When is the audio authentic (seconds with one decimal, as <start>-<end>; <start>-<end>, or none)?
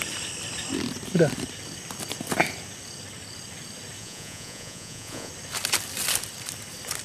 0.0-4.0; 5.3-7.0